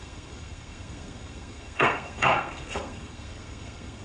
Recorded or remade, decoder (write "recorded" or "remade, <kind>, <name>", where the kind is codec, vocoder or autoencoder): remade, codec, SNAC